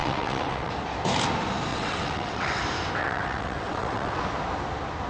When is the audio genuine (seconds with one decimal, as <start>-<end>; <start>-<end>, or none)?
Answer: 0.7-1.7; 2.6-3.0; 4.2-5.1